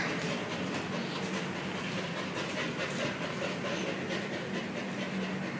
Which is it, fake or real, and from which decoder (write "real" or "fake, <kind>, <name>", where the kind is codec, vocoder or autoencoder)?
real